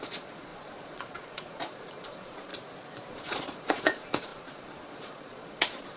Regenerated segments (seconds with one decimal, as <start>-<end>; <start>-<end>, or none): 0.0-2.5; 3.1-6.0